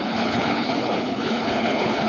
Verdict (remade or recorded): remade